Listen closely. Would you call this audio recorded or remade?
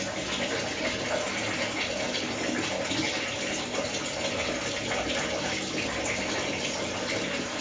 recorded